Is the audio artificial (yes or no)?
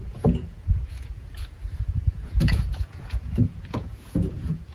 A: yes